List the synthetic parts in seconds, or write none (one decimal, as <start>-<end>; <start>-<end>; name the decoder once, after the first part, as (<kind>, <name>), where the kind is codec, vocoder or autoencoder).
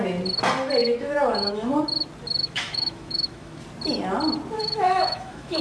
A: 0.8-1.7 (autoencoder, DAC-VAE); 2.4-3.6; 4.6-5.6